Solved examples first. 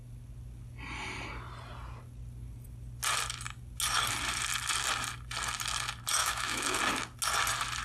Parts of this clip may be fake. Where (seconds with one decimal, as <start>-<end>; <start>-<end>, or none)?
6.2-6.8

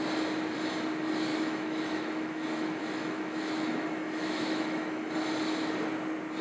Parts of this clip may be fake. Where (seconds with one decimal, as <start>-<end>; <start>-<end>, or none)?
1.3-5.1

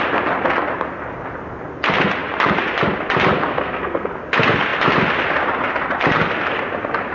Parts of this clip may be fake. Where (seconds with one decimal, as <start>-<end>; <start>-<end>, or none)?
3.5-4.1

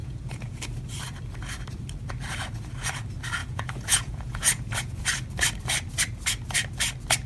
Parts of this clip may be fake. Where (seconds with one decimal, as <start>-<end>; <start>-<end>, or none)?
0.0-0.6; 3.4-5.0

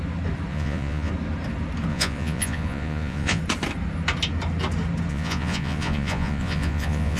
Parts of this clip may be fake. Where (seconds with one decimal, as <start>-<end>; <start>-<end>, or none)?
0.5-1.1; 1.9-3.4; 5.1-7.2

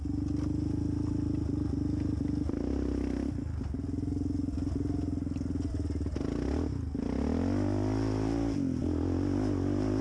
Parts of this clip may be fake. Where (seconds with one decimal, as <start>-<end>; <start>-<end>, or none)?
none

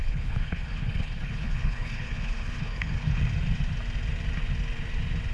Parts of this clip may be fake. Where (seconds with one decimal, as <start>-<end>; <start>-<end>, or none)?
0.0-3.2